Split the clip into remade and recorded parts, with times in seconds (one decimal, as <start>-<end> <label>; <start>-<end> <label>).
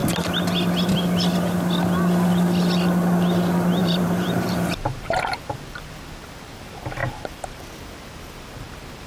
0.0-3.8 recorded; 3.8-5.6 remade; 5.6-7.0 recorded; 7.0-7.7 remade; 7.7-9.1 recorded